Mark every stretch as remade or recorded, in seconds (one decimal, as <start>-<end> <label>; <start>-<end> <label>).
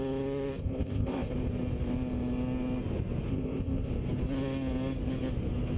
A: 0.0-0.6 recorded; 0.6-1.3 remade; 1.3-3.3 recorded; 3.3-3.9 remade; 3.9-5.8 recorded